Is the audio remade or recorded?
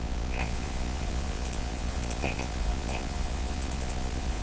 remade